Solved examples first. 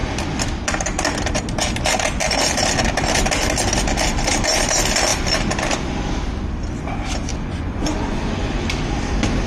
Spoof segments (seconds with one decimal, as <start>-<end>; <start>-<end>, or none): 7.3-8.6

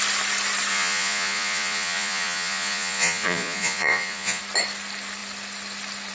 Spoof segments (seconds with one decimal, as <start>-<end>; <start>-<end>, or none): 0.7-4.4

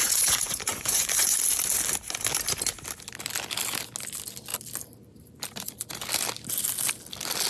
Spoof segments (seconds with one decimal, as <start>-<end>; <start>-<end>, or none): 0.0-1.4

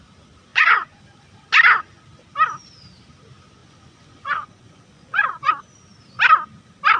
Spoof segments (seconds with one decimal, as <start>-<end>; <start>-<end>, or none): 0.5-1.0; 3.6-5.5

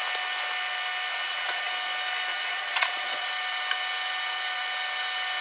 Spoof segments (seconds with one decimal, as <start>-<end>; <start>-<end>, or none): 1.1-1.7; 2.3-3.3